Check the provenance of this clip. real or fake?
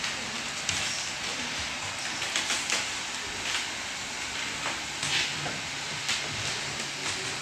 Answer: real